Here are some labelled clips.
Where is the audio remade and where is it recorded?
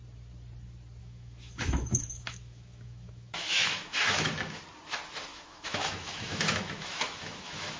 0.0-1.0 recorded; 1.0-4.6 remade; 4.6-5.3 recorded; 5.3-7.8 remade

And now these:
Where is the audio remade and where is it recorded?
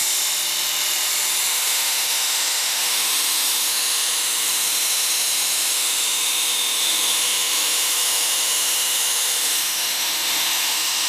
0.0-1.5 recorded; 1.5-11.1 remade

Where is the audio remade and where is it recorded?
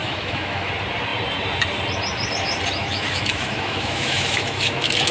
0.0-0.7 remade; 0.7-2.8 recorded; 2.8-5.1 remade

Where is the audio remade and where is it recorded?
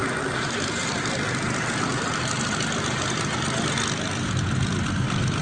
0.0-5.4 recorded